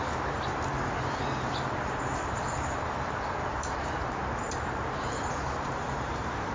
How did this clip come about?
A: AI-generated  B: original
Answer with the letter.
A